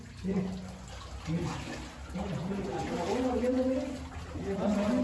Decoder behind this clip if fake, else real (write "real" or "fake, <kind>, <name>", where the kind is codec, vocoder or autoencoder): real